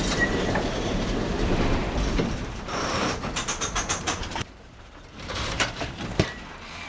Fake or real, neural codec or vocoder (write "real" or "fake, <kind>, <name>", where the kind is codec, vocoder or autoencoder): fake, vocoder, BigVGAN v2